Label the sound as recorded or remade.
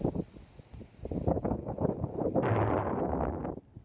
recorded